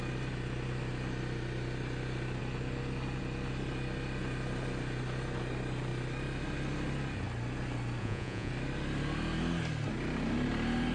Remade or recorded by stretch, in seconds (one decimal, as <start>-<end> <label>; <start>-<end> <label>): 0.0-8.0 recorded; 8.0-8.5 remade; 8.5-10.9 recorded